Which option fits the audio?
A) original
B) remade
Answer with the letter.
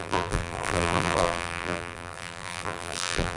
B